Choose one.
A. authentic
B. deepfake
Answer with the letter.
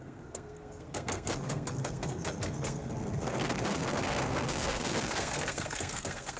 B